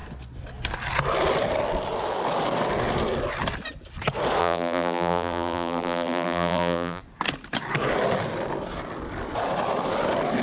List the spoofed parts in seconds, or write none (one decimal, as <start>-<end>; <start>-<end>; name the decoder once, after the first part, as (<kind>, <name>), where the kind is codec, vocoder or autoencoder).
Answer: 4.4-7.0 (vocoder, BigVGAN v2)